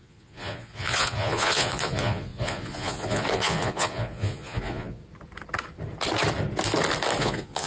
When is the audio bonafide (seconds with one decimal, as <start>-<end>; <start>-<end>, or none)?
5.0-7.2